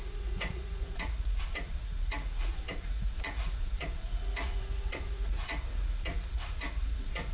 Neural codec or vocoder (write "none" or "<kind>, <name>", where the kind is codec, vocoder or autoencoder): vocoder, Vocos